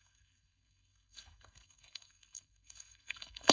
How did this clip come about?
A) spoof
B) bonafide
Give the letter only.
A